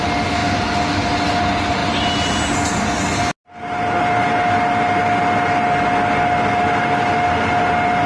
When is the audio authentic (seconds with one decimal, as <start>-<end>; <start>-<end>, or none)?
0.0-8.1